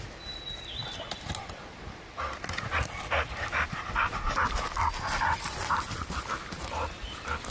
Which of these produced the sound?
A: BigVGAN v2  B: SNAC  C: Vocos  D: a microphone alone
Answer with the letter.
D